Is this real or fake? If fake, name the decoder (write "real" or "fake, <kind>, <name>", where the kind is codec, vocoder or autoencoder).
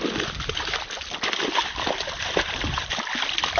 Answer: real